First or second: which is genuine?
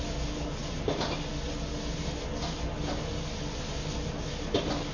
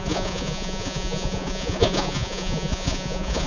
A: first